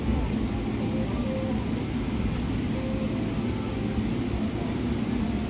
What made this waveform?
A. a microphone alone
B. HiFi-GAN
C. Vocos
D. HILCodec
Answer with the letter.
A